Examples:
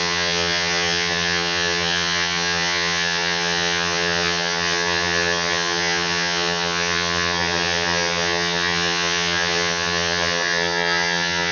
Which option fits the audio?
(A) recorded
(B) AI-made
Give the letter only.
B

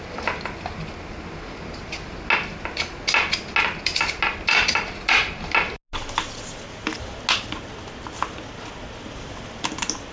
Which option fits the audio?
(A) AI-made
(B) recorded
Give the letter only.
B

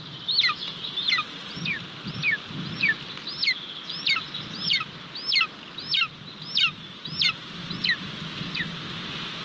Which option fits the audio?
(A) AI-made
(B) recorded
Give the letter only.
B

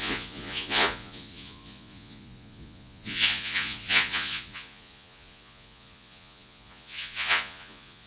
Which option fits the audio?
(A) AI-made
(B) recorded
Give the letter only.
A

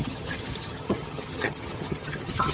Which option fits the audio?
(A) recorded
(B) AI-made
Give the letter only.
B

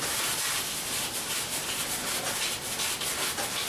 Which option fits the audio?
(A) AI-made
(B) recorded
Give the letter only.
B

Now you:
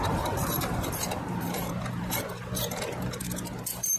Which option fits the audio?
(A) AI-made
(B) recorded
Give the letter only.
A